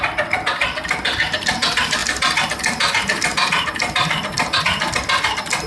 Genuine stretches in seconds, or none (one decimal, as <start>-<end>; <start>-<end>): 0.0-5.7